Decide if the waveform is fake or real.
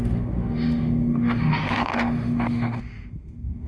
fake